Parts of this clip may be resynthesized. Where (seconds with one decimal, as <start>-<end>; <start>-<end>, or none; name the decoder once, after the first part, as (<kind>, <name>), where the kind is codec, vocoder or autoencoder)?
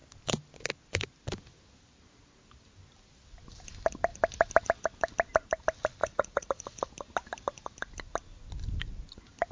6.0-6.5 (vocoder, Vocos)